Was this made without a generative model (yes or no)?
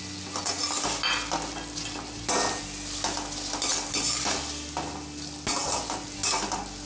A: yes